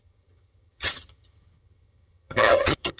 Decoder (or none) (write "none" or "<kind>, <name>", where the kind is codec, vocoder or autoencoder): vocoder, HiFi-GAN